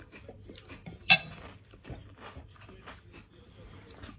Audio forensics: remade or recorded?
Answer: remade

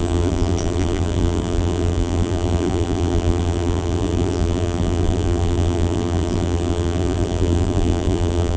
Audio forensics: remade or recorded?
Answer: remade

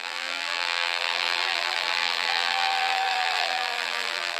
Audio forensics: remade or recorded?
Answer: remade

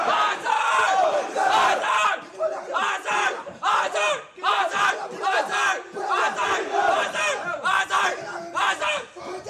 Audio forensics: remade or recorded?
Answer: remade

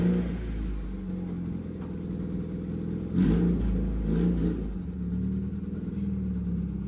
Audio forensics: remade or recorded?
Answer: recorded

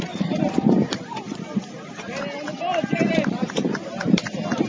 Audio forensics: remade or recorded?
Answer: remade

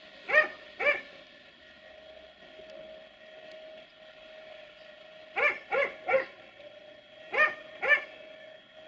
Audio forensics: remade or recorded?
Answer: recorded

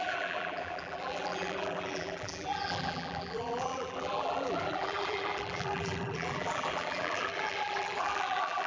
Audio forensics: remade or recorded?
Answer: remade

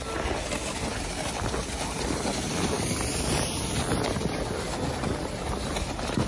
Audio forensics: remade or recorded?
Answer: recorded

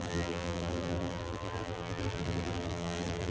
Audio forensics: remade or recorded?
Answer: remade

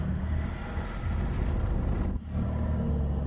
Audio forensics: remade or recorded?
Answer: recorded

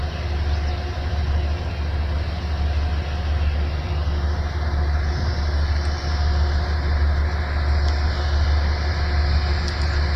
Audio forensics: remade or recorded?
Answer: recorded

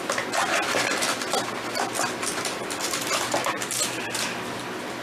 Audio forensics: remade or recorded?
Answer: recorded